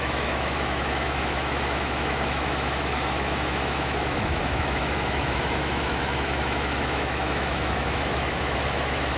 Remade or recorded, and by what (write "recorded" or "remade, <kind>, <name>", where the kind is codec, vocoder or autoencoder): remade, autoencoder, DAC-VAE